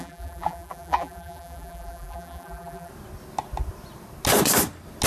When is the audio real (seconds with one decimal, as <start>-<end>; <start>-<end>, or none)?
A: 2.9-5.1